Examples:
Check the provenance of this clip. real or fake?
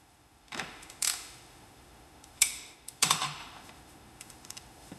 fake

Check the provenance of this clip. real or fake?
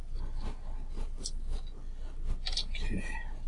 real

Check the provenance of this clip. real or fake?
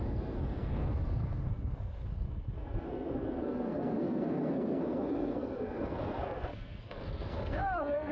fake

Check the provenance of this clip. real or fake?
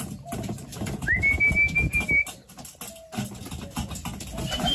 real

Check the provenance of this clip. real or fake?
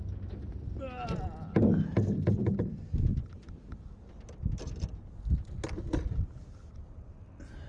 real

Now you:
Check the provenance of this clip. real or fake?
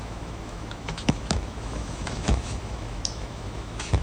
fake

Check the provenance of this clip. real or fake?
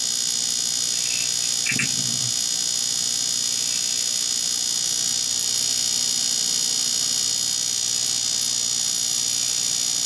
real